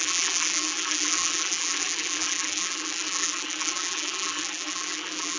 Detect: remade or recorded remade